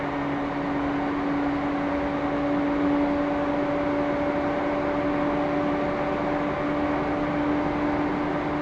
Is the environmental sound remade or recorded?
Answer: recorded